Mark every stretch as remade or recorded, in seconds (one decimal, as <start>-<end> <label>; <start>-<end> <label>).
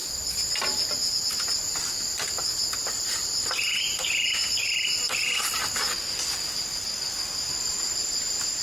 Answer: 0.0-8.6 recorded